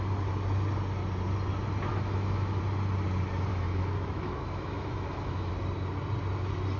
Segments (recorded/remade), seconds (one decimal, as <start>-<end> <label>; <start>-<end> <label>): 0.0-1.9 recorded; 1.9-2.6 remade; 2.6-3.5 recorded; 3.5-5.5 remade; 5.5-6.8 recorded